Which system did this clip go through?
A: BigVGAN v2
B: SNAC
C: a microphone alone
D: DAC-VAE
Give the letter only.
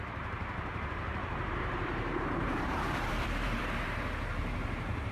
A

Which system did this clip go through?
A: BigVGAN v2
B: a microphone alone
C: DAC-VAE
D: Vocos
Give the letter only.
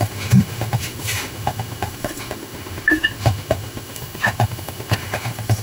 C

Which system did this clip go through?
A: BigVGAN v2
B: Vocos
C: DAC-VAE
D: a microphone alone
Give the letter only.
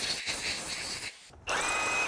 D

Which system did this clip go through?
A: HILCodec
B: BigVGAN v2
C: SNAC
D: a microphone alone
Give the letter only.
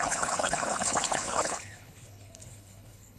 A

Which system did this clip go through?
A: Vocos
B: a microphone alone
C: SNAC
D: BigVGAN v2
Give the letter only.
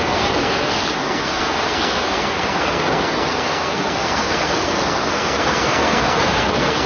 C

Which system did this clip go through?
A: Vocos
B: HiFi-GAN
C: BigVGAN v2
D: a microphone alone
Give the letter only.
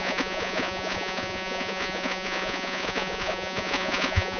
A